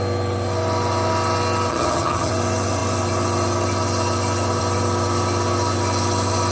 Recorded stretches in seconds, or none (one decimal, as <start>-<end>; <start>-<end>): 0.0-1.7; 2.3-6.5